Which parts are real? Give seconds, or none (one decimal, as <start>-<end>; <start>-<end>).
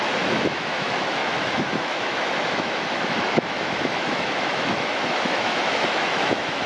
none